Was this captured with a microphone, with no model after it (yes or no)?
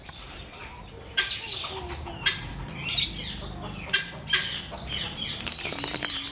yes